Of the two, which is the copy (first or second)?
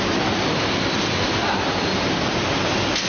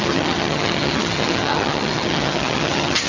second